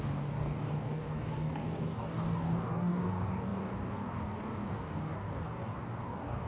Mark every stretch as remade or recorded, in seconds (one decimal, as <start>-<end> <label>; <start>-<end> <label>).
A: 0.0-6.5 remade

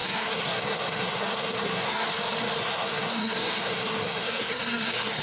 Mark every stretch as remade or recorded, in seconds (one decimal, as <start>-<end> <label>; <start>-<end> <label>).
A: 0.0-2.1 remade; 2.1-2.6 recorded; 2.6-5.2 remade

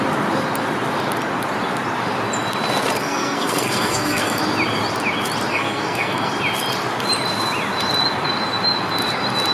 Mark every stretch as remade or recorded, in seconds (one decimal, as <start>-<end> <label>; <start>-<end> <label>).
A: 0.0-3.0 recorded; 3.0-4.4 remade; 4.4-5.5 recorded; 5.5-6.3 remade; 6.3-9.5 recorded

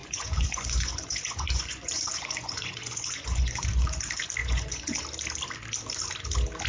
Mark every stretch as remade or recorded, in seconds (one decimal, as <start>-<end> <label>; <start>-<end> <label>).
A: 0.0-4.0 remade; 4.0-4.4 recorded; 4.4-5.0 remade; 5.0-6.7 recorded

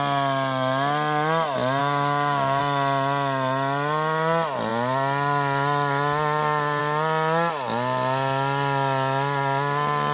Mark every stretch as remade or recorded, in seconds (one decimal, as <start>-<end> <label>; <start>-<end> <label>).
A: 0.0-1.8 recorded; 1.8-2.6 remade; 2.6-10.1 recorded

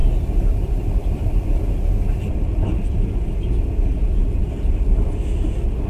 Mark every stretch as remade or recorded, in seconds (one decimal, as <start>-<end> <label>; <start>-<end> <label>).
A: 0.0-1.9 remade; 1.9-4.4 recorded; 4.4-5.0 remade; 5.0-5.9 recorded